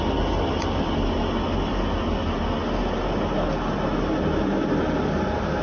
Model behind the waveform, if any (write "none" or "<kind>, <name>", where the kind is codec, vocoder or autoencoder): none